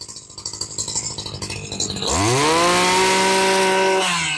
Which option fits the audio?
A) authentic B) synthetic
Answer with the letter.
A